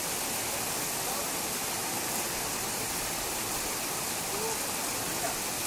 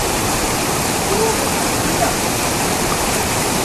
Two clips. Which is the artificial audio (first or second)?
second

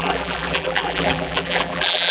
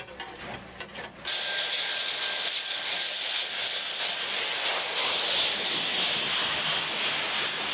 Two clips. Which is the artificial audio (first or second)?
first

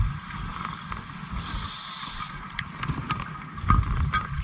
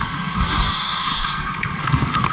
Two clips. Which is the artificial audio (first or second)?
second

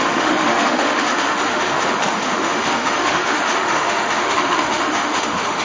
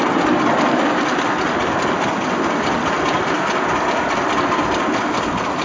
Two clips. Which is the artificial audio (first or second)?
first